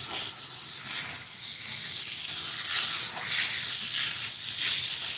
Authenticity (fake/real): real